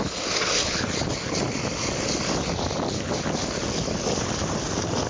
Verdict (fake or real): real